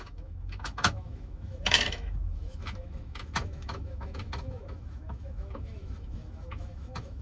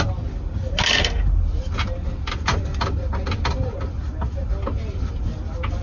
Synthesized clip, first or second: first